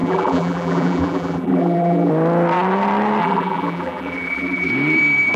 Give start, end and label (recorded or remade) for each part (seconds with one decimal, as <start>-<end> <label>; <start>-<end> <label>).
0.0-2.1 remade; 2.1-3.2 recorded; 3.2-4.7 remade; 4.7-5.4 recorded